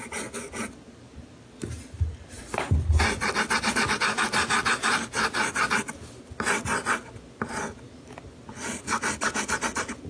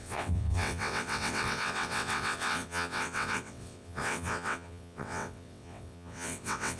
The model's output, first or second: second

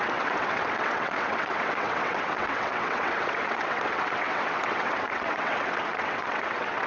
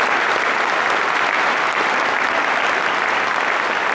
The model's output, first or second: first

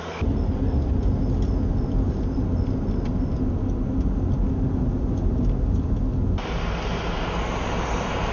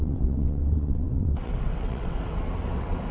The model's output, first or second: second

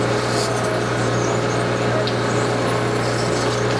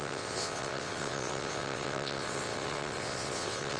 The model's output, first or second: second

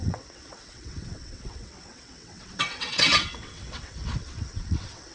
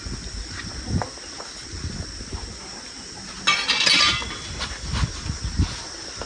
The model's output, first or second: first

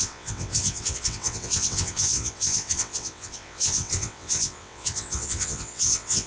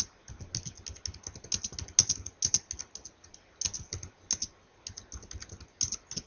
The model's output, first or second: first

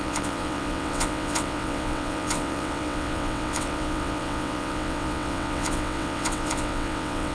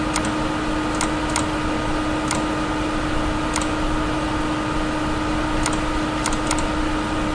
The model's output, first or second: first